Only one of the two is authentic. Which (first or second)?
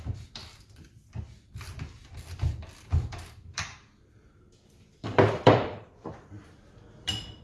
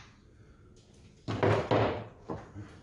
second